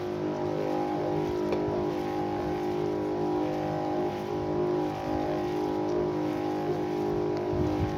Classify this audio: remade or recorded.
recorded